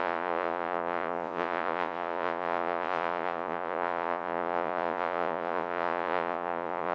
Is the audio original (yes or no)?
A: no